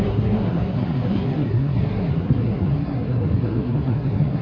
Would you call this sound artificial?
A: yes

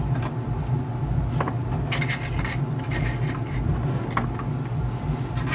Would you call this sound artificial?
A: no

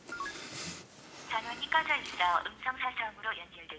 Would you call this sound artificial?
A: no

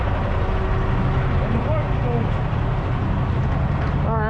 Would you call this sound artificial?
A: no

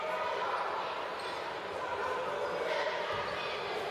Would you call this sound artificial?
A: no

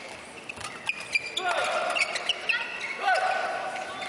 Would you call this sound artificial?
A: no